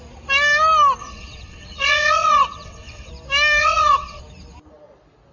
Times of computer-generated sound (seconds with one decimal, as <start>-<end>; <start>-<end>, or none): 1.0-3.1; 3.6-4.2